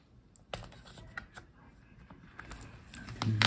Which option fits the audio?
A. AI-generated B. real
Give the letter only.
B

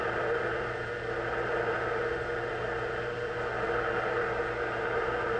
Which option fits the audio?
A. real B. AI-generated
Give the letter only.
A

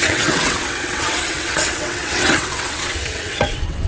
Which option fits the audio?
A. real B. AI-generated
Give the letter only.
B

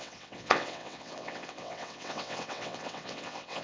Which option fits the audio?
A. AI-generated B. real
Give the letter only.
A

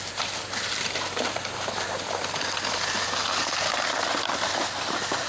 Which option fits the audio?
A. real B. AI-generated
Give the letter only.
A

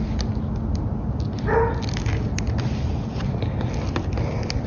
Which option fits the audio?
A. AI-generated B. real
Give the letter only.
B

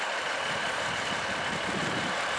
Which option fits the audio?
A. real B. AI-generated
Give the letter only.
A